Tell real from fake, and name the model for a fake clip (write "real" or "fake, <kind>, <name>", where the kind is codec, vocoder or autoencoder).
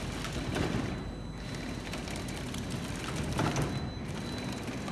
real